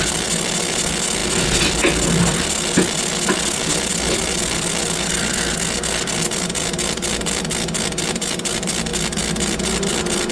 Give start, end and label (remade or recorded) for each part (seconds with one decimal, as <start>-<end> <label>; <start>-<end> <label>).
0.0-10.3 recorded